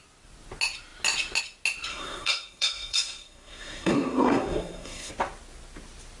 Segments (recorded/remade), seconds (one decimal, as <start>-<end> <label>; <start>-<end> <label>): 0.0-1.9 recorded; 1.9-5.1 remade; 5.1-6.2 recorded